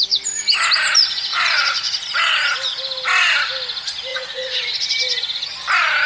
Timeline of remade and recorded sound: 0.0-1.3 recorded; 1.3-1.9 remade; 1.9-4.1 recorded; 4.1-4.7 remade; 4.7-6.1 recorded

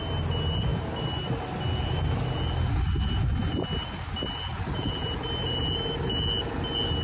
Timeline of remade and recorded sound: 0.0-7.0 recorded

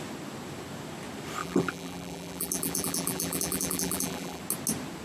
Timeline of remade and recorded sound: 0.0-1.4 recorded; 1.4-4.4 remade; 4.4-5.0 recorded